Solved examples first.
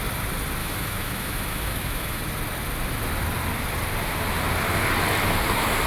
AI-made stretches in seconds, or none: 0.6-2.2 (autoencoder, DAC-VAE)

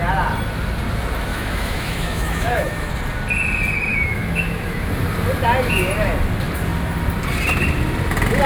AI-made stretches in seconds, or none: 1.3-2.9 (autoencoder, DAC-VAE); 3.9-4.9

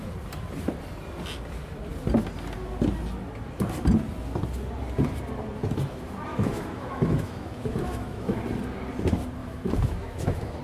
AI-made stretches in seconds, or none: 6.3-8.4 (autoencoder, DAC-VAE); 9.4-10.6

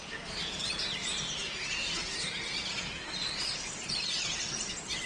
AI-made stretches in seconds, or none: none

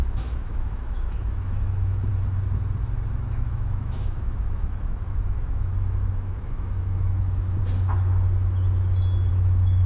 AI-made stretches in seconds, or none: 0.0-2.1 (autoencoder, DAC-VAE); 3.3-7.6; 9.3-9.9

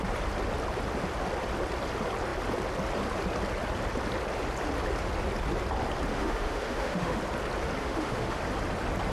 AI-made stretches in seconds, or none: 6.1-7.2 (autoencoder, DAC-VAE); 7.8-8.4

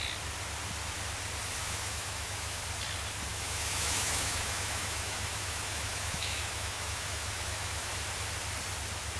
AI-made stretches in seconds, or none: 1.6-2.6 (autoencoder, DAC-VAE); 3.3-7.9